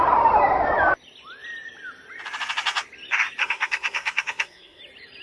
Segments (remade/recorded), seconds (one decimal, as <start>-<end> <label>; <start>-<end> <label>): 0.0-3.4 recorded; 3.4-4.8 remade; 4.8-5.2 recorded